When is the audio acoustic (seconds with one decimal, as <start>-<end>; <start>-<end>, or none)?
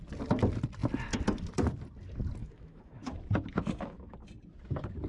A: 0.0-2.4; 3.1-5.1